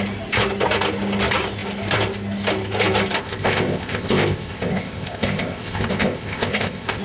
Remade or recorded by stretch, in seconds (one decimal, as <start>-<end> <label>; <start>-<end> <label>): 0.0-3.2 recorded; 3.2-7.0 remade